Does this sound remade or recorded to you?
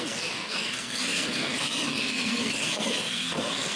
remade